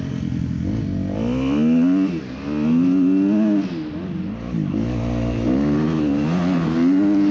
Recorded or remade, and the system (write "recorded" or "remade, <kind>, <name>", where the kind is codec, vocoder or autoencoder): recorded